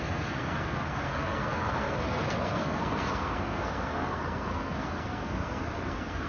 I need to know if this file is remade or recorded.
remade